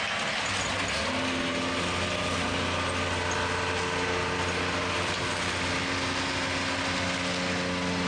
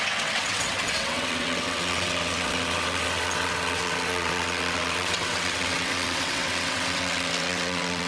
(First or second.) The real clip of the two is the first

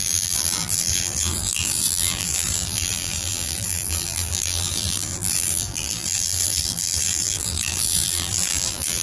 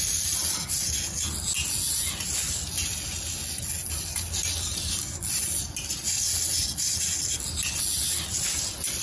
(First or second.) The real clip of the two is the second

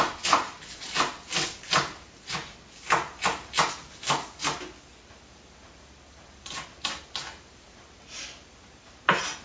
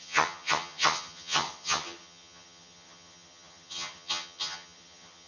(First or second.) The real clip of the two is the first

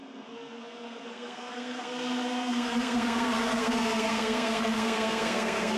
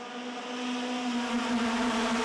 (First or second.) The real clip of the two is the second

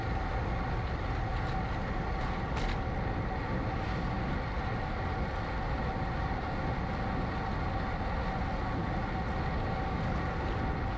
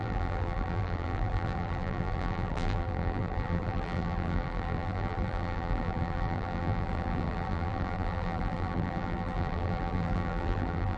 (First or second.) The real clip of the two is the first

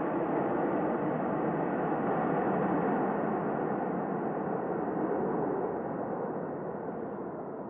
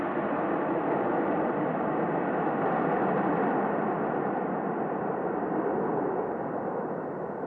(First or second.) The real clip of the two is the first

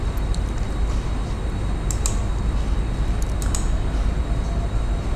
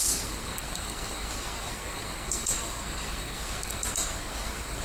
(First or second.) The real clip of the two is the first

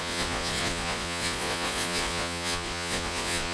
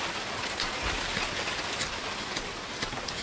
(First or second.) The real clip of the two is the second